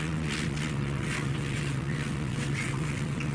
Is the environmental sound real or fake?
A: fake